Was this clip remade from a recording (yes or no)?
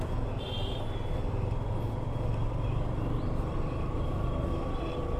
no